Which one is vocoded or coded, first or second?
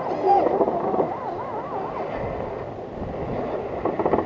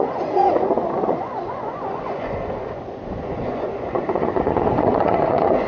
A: second